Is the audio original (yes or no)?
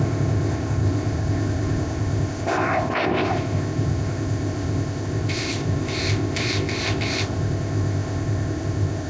no